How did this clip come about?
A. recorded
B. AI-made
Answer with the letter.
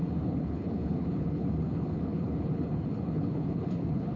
B